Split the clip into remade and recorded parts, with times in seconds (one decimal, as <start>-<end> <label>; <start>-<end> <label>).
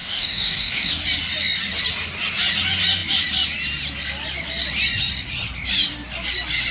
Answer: 0.0-1.0 remade; 1.0-6.7 recorded